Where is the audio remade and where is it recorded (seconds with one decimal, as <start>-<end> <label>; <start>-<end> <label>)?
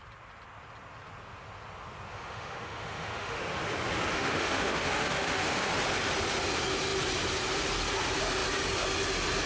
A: 0.0-2.1 recorded; 2.1-3.4 remade; 3.4-4.1 recorded; 4.1-5.7 remade; 5.7-9.5 recorded